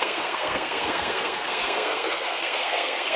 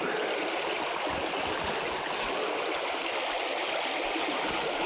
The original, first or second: second